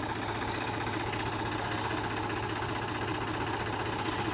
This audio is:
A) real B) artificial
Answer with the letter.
A